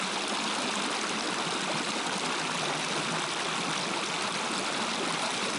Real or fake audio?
real